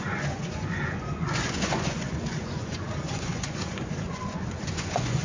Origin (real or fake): fake